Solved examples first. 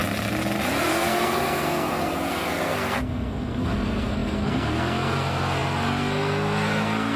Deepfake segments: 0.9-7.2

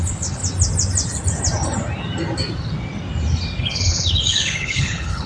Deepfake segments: 0.0-0.4; 3.6-5.3

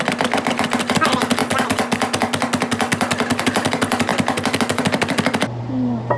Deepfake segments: none

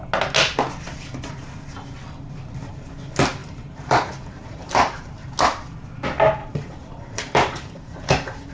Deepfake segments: 3.4-5.3; 6.4-8.5

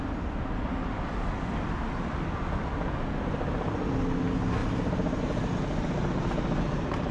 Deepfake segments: 4.6-5.2

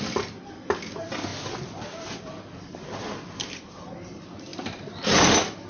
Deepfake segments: none

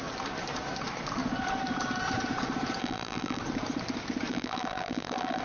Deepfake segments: 2.8-3.4; 4.3-5.4

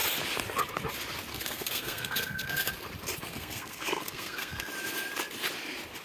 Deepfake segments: 1.3-2.7; 3.3-4.7